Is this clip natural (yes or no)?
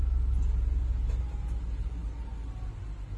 yes